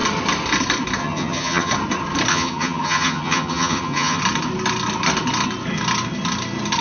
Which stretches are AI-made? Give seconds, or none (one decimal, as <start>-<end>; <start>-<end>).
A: 1.0-1.7; 2.3-4.2